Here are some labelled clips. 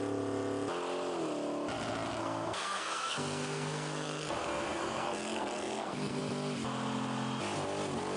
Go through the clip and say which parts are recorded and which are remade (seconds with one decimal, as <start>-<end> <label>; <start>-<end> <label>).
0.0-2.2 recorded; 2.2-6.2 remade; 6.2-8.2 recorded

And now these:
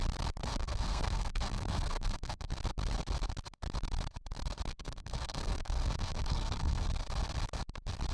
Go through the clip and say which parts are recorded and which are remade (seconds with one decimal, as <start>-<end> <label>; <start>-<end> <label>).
0.0-0.4 recorded; 0.4-2.5 remade; 2.5-4.7 recorded; 4.7-6.8 remade; 6.8-8.1 recorded

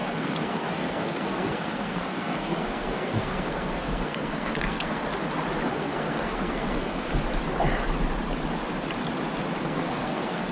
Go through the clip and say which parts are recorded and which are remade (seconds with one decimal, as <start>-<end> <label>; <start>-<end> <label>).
0.0-5.0 remade; 5.0-5.7 recorded; 5.7-7.1 remade; 7.1-9.6 recorded; 9.6-10.5 remade